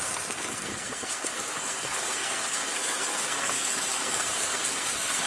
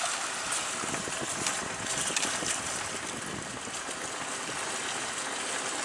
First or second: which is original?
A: second